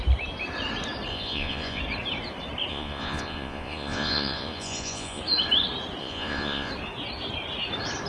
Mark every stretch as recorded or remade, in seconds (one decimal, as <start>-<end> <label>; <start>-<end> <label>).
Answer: 0.0-1.1 recorded; 1.1-1.8 remade; 1.8-2.7 recorded; 2.7-5.2 remade; 5.2-6.0 recorded; 6.0-6.7 remade; 6.7-8.1 recorded